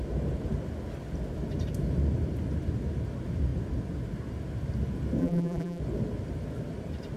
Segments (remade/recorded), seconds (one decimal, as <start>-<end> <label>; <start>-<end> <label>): 0.0-5.2 recorded; 5.2-5.8 remade; 5.8-7.2 recorded